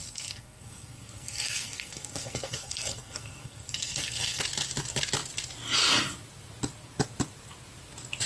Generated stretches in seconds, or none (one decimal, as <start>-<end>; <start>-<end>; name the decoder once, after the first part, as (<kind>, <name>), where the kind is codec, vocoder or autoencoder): 0.0-4.4 (codec, SNAC)